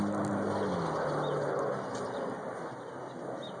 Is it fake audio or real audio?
real